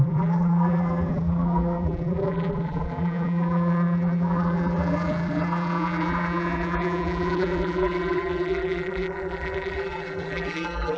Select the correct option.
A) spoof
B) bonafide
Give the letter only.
A